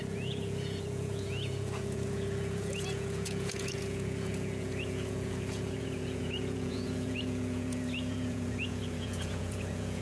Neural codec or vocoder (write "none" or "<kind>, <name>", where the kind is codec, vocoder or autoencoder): vocoder, Vocos